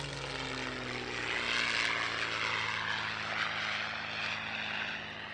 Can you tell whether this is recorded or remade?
recorded